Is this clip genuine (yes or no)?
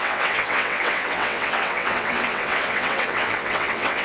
no